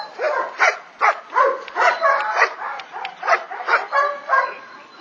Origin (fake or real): real